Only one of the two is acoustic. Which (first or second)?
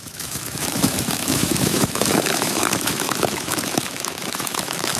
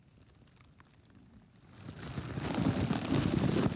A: second